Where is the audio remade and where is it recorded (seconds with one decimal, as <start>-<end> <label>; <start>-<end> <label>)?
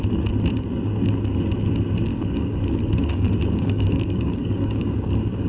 0.0-2.1 recorded; 2.1-5.5 remade